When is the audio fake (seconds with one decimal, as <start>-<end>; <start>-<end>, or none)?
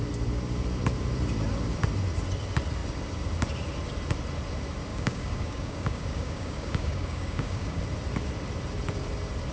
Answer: 4.9-7.8